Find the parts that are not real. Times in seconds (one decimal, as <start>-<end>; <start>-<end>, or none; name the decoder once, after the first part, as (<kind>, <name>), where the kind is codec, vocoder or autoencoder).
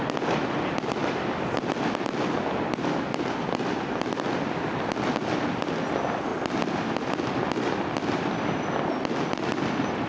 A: none